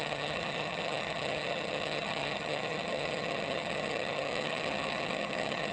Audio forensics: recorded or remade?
remade